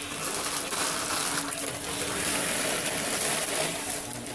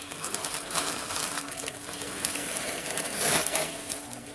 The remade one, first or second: second